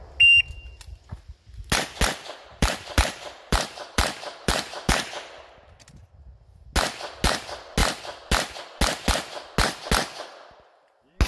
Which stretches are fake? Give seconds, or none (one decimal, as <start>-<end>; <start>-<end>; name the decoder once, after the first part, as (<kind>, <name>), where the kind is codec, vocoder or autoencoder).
2.5-5.1 (vocoder, BigVGAN v2)